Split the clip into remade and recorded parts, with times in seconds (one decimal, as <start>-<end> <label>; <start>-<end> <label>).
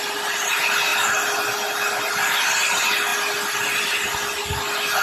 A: 0.0-5.0 recorded